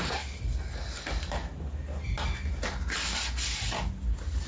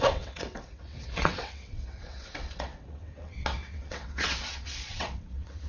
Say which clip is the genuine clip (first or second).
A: first